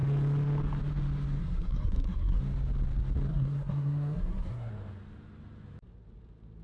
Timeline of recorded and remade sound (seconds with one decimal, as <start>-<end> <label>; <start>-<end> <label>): 0.0-1.4 recorded; 1.4-2.4 remade; 2.4-3.3 recorded; 3.3-4.7 remade; 4.7-6.6 recorded